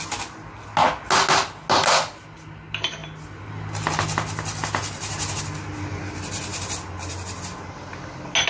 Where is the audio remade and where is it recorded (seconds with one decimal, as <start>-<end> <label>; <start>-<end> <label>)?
0.0-8.5 recorded